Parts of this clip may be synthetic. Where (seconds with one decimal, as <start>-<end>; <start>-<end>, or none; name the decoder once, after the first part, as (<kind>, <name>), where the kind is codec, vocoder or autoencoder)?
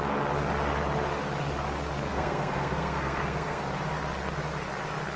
2.1-3.6 (codec, SNAC)